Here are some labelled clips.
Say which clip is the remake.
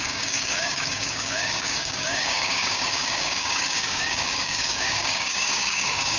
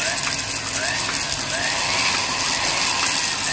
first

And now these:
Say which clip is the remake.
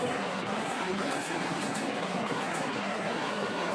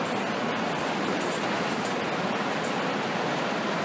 first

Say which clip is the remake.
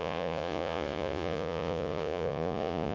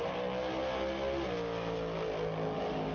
first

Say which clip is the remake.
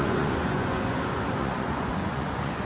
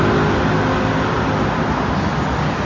first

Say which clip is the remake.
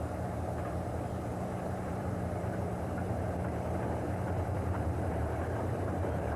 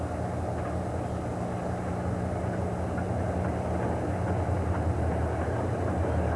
first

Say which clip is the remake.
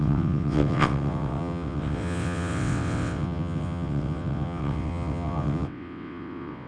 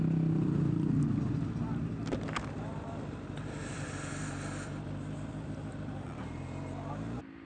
first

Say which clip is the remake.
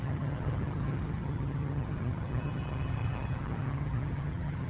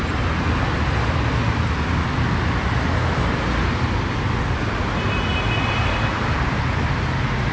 first